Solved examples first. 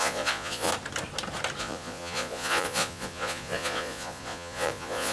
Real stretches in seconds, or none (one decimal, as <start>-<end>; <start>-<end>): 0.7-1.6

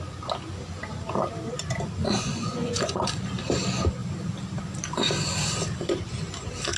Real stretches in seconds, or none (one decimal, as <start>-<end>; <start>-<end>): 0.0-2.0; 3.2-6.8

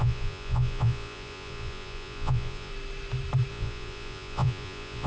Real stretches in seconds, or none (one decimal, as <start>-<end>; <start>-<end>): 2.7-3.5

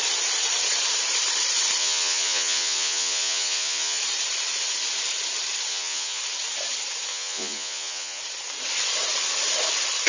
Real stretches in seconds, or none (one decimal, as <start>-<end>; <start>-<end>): 0.0-1.8; 4.0-5.7; 6.2-7.1; 8.2-10.1

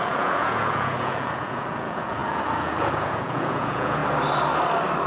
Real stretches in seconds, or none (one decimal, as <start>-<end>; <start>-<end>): 4.0-5.1

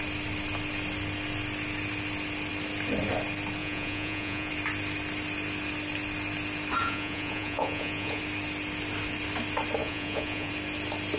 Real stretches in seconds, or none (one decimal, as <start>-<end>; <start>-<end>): 0.0-3.6; 4.5-6.8; 8.2-9.8; 10.5-11.2